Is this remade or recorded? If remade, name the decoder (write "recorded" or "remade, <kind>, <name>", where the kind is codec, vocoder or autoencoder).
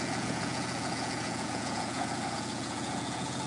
remade, vocoder, Vocos